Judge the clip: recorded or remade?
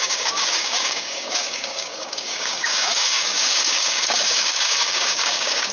remade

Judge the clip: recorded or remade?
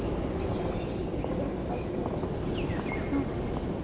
recorded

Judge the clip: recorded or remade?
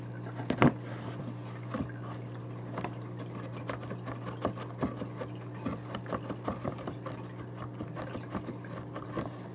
recorded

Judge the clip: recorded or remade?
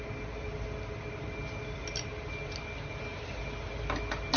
recorded